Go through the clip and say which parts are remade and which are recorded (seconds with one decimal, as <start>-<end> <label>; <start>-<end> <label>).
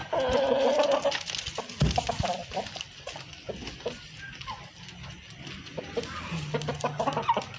0.0-7.6 recorded